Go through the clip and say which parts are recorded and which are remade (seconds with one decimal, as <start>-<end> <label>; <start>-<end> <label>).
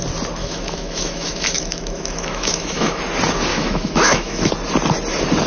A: 0.0-0.4 recorded; 0.4-3.0 remade; 3.0-3.5 recorded; 3.5-4.5 remade; 4.5-5.5 recorded